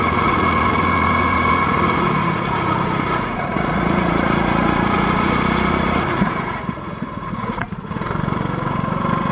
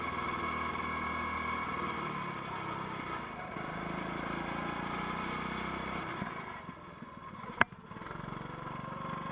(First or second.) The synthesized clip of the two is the first